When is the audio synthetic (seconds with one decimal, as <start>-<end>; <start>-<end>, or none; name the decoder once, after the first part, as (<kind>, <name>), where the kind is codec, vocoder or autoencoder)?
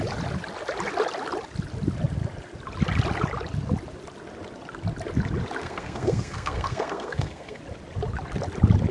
5.6-7.6 (codec, SNAC)